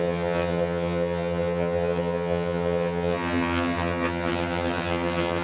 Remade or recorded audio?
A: remade